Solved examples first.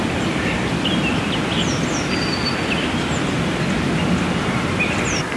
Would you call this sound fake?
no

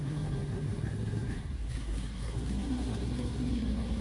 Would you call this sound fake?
yes